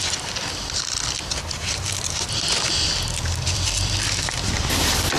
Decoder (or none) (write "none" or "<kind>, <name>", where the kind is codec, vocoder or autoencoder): vocoder, BigVGAN v2